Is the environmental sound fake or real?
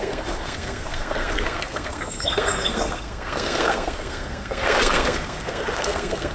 fake